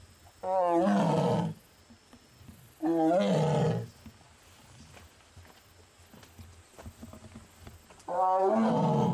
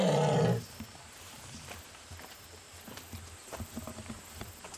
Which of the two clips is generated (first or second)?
second